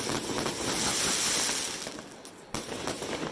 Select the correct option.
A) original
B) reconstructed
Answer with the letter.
A